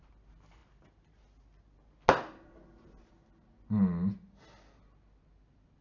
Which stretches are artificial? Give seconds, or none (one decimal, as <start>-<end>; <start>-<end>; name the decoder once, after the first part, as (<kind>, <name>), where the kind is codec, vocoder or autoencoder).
none